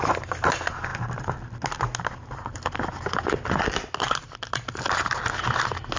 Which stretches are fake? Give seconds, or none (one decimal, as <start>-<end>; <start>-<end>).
none